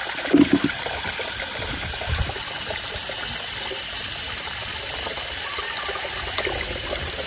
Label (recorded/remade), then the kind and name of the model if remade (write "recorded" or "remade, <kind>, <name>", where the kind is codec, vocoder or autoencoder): recorded